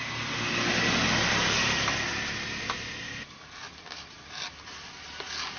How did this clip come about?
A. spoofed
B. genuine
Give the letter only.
B